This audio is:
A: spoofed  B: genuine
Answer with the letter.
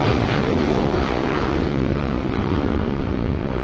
A